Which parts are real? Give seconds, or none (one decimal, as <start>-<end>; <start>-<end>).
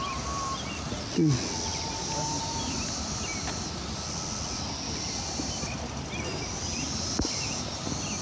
0.0-8.2